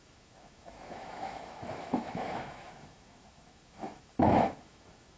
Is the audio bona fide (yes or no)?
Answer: no